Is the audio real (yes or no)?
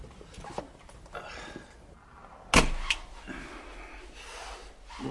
yes